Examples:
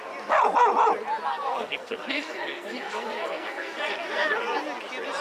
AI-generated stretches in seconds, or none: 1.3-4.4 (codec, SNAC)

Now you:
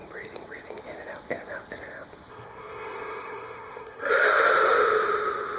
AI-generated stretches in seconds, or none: 2.3-4.1 (codec, SNAC)

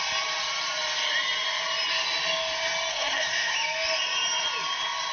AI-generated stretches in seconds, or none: 2.9-3.5 (codec, SNAC)

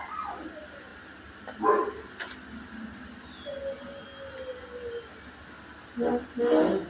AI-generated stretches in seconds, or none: none

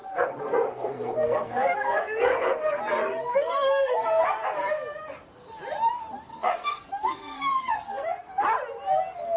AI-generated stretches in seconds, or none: 0.0-2.8 (codec, SNAC); 3.3-4.2; 6.3-8.3